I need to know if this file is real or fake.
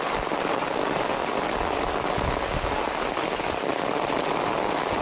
real